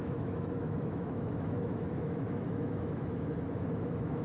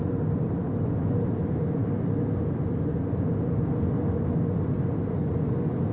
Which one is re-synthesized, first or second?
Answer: first